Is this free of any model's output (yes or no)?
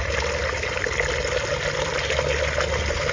yes